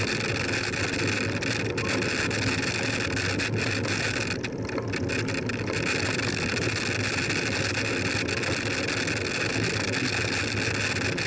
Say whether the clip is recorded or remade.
recorded